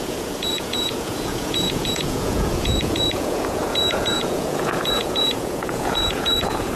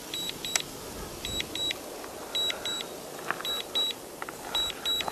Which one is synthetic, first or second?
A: first